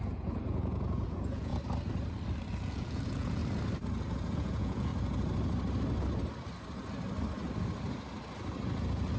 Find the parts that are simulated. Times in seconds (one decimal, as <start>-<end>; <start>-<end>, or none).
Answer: 0.0-1.5; 2.6-3.4; 4.3-4.9